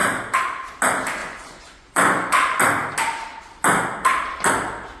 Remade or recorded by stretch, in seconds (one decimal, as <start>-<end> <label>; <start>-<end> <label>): 0.0-1.2 recorded; 1.2-2.6 remade; 2.6-5.0 recorded